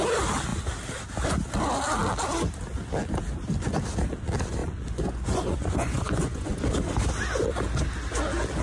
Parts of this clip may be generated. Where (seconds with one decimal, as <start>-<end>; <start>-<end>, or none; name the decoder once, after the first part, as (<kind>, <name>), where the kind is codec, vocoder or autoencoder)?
4.6-6.6 (vocoder, Vocos)